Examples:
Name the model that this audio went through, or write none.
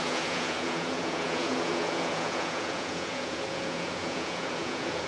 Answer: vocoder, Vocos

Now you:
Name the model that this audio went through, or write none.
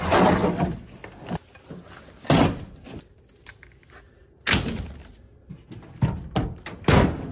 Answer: none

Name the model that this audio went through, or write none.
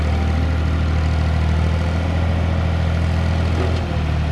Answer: none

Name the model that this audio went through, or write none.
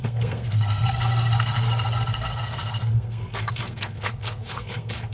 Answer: codec, SNAC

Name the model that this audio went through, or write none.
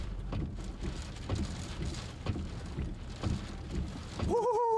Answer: none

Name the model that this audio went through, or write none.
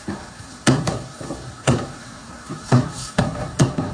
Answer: codec, SNAC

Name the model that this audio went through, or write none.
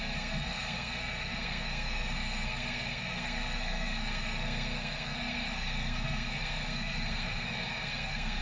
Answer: codec, SNAC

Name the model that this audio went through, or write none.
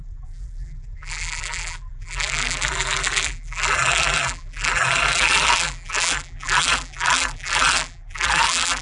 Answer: vocoder, BigVGAN v2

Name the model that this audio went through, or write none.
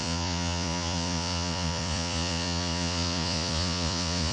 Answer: vocoder, Vocos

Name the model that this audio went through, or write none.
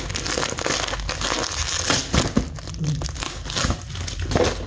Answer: none